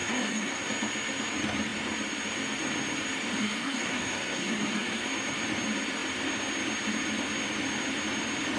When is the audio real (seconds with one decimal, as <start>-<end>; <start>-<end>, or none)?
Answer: 0.7-3.4; 5.0-8.6